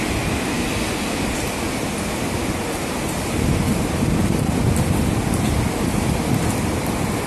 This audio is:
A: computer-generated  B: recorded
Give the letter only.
B